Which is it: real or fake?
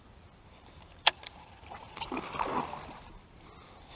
fake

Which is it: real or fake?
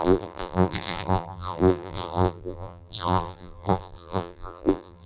fake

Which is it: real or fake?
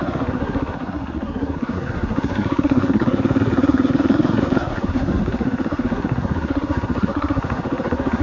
fake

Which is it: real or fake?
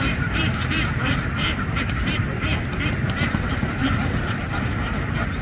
fake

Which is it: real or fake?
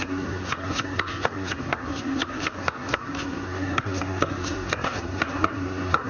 fake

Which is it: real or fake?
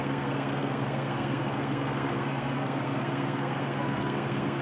fake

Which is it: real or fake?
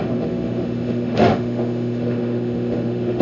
fake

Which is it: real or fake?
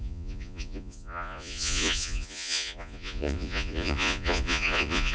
fake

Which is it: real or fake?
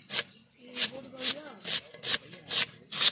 real